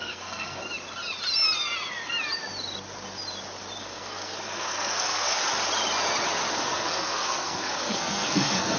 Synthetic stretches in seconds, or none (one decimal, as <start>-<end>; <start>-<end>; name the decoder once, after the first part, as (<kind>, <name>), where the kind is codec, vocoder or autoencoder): 0.0-0.6 (codec, SNAC); 3.8-5.4; 6.5-8.8